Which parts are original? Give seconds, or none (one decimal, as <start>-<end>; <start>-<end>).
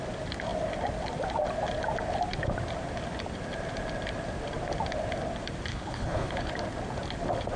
0.0-5.7; 6.5-7.6